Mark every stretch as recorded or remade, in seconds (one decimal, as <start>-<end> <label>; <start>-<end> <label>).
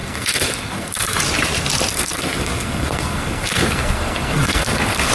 0.0-1.2 remade; 1.2-1.9 recorded; 1.9-5.1 remade